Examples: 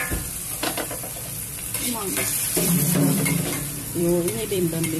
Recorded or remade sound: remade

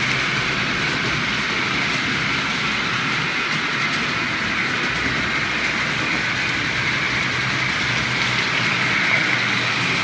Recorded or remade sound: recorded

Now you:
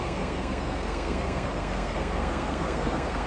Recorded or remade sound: remade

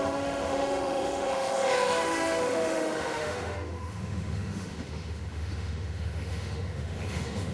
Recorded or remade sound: remade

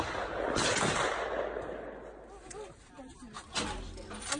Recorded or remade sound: recorded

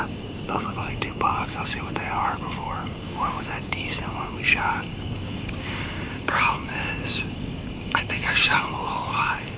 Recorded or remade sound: remade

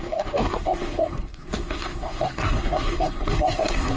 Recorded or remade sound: remade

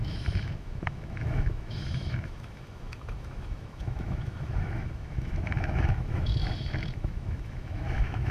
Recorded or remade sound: remade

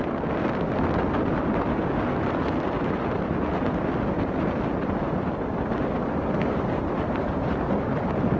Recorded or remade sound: recorded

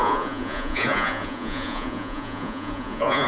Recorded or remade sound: remade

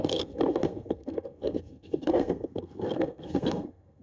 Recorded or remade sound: remade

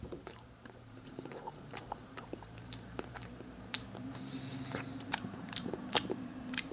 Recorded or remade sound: remade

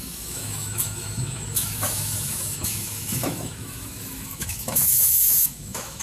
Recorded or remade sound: remade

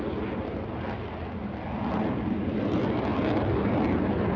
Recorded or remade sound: recorded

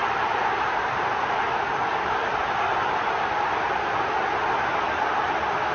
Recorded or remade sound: recorded